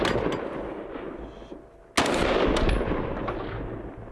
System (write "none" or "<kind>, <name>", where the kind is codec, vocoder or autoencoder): none